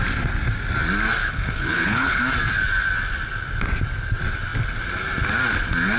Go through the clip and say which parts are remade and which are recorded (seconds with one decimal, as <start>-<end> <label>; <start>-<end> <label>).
0.0-1.2 recorded; 1.2-2.2 remade; 2.2-6.0 recorded